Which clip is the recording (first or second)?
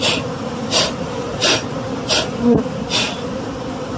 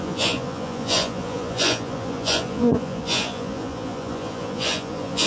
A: first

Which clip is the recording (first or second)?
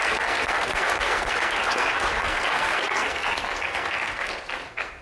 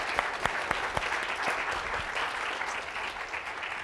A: second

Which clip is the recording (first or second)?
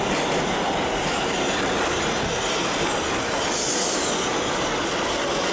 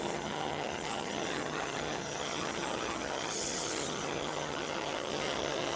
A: first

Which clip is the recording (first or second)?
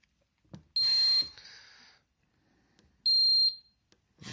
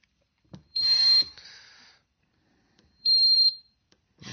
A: first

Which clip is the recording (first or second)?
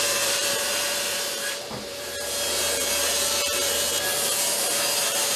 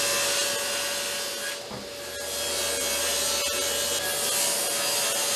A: second